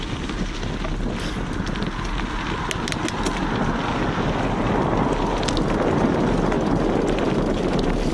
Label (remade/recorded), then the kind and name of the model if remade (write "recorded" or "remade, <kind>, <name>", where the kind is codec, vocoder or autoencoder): recorded